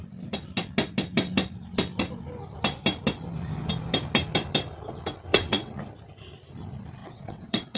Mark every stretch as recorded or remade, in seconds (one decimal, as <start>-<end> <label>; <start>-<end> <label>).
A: 0.0-5.3 recorded; 5.3-5.8 remade; 5.8-7.0 recorded; 7.0-7.8 remade